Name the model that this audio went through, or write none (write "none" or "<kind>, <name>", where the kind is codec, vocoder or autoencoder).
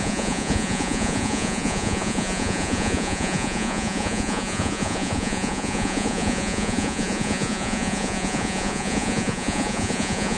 vocoder, Vocos